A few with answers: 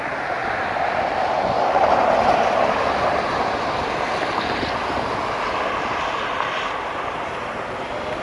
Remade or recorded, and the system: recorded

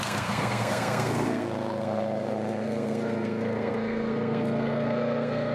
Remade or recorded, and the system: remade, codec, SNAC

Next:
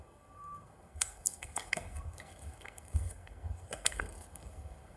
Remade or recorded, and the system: remade, codec, SNAC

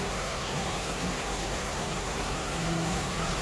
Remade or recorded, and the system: remade, codec, SNAC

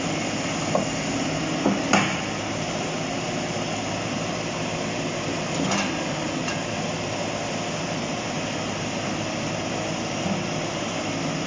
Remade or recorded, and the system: recorded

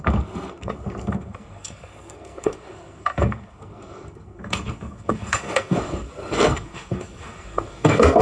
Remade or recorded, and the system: remade, codec, SNAC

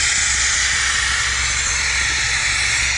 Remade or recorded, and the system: recorded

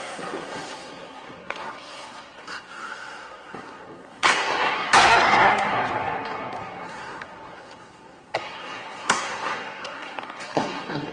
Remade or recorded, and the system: remade, codec, SNAC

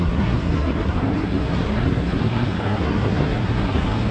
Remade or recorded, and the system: remade, codec, SNAC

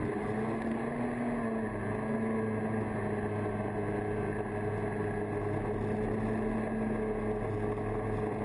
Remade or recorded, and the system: recorded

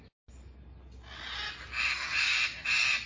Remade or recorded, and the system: recorded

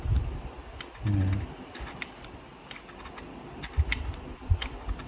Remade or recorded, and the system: recorded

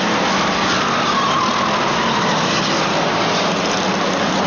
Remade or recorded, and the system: recorded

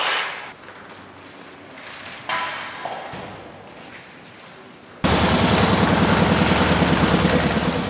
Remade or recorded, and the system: recorded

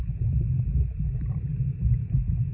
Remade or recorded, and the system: recorded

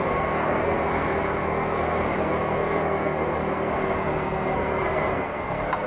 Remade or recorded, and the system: remade, codec, SNAC